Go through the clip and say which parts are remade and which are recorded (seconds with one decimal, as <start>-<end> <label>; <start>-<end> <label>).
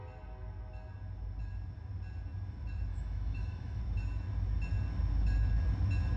0.0-2.9 recorded; 2.9-3.8 remade; 3.8-6.2 recorded